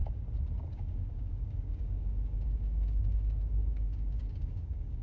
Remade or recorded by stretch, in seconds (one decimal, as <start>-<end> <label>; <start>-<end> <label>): 0.0-0.7 recorded; 0.7-5.0 remade